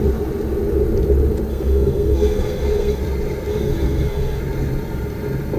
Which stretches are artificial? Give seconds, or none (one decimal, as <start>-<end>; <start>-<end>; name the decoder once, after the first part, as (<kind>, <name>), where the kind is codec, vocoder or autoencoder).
1.5-3.0 (codec, SNAC); 3.5-4.4